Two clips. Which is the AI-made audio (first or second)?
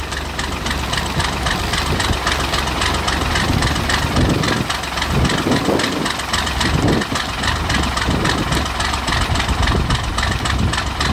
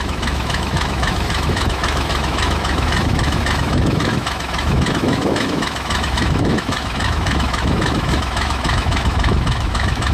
second